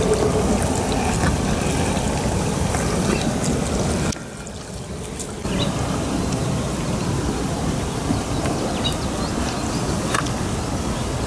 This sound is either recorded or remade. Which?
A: recorded